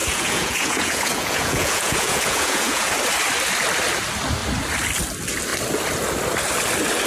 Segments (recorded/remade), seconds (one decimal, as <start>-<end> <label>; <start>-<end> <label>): 0.0-2.9 remade; 2.9-7.1 recorded